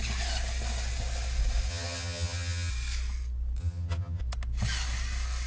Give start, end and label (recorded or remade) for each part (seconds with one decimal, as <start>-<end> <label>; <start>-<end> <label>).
0.0-1.7 recorded; 1.7-2.7 remade; 2.7-3.6 recorded; 3.6-4.2 remade; 4.2-5.5 recorded